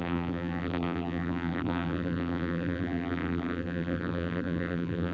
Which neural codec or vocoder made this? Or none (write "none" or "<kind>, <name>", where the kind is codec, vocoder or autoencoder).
vocoder, BigVGAN v2